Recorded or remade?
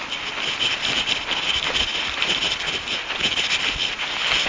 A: recorded